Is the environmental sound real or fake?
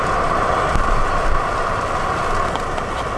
real